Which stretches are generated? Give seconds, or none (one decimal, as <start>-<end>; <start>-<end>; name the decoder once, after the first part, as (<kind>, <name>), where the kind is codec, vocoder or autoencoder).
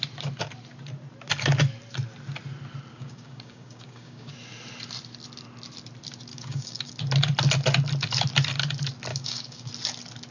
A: 2.9-4.3 (codec, DAC); 6.3-6.9; 9.1-9.7